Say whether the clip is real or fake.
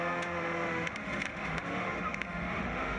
fake